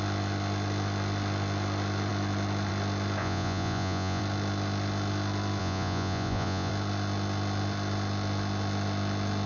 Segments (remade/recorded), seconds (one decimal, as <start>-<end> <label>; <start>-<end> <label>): 0.0-3.2 recorded; 3.2-4.2 remade; 4.2-5.6 recorded; 5.6-6.7 remade; 6.7-9.5 recorded